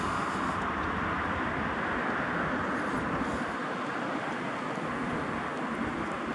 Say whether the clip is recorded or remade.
recorded